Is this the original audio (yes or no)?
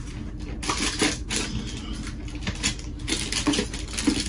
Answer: yes